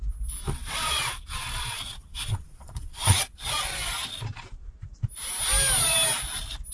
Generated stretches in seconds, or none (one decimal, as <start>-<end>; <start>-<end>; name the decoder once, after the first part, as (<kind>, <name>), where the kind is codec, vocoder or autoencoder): 0.4-3.9 (vocoder, Vocos)